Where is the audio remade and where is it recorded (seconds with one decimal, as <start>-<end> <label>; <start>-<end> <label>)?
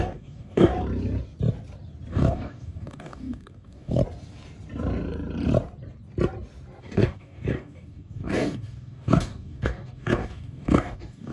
0.0-0.7 remade; 0.7-2.1 recorded; 2.1-4.0 remade; 4.0-6.8 recorded; 6.8-11.3 remade